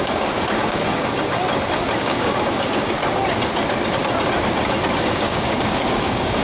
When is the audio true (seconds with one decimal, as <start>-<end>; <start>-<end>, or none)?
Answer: 1.4-2.0; 3.0-5.0